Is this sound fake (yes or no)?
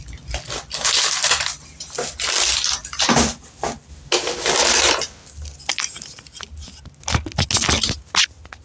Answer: no